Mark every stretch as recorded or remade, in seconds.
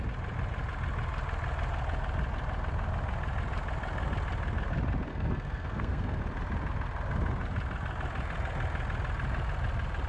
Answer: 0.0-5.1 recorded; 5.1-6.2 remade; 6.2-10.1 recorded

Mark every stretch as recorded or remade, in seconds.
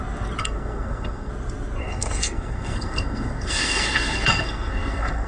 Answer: 0.0-0.4 recorded; 0.4-1.3 remade; 1.3-1.8 recorded; 1.8-5.3 remade